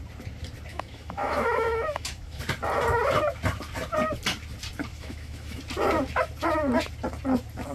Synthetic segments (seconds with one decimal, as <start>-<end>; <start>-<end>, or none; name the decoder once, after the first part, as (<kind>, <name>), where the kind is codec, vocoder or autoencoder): 0.7-2.4 (autoencoder, DAC-VAE); 4.9-5.6